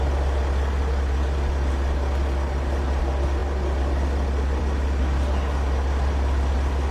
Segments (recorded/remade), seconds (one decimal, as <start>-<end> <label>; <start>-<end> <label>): 0.0-6.9 recorded